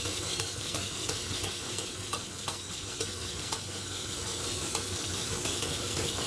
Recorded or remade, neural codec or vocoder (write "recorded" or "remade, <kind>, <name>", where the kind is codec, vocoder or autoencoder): remade, codec, SNAC